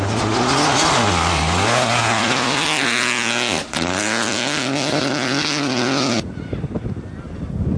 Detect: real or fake real